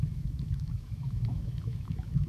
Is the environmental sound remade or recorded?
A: remade